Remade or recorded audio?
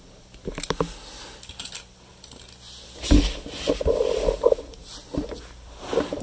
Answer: recorded